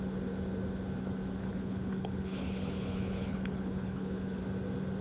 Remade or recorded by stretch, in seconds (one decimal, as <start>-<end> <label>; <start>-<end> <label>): 0.0-1.4 recorded; 1.4-4.4 remade; 4.4-5.0 recorded